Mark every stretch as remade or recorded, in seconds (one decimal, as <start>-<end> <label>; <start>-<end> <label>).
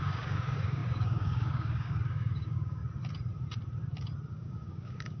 0.0-2.8 remade; 2.8-4.3 recorded; 4.3-5.2 remade